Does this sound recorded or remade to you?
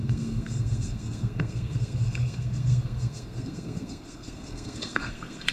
remade